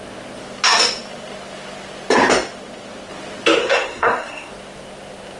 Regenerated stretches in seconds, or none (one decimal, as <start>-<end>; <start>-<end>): 3.6-4.5